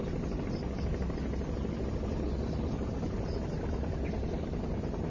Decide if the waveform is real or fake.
real